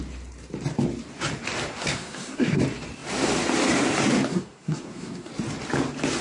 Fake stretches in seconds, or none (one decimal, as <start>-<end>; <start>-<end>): 1.8-2.6; 4.3-5.3